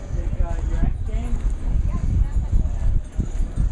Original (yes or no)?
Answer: yes